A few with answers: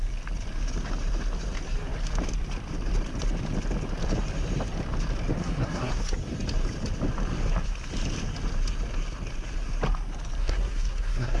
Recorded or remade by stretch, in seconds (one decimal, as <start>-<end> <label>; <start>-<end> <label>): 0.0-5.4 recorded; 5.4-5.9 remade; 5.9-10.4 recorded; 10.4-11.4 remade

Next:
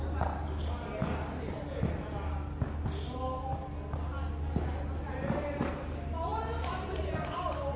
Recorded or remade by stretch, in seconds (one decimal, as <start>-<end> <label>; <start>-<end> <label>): 0.0-7.8 recorded

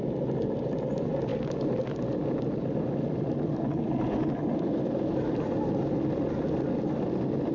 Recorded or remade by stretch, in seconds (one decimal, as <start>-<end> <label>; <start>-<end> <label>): 0.0-7.5 recorded

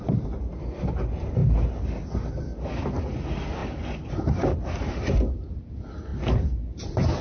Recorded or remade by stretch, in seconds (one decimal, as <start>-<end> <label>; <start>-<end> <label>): 0.0-7.2 recorded

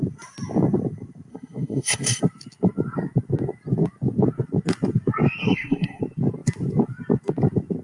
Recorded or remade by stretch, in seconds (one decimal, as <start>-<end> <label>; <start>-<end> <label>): 0.0-1.3 recorded; 1.3-2.2 remade; 2.2-5.4 recorded; 5.4-6.0 remade; 6.0-7.8 recorded

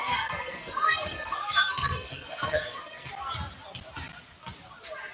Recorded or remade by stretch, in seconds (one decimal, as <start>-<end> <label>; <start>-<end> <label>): 0.0-3.1 remade; 3.1-5.1 recorded

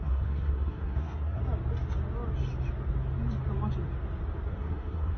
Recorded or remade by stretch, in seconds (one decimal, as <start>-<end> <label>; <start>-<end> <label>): 0.0-1.4 remade; 1.4-4.5 recorded; 4.5-5.2 remade